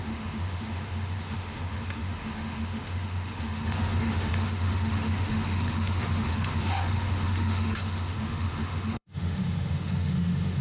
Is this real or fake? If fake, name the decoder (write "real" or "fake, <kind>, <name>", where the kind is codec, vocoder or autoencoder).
fake, autoencoder, DAC-VAE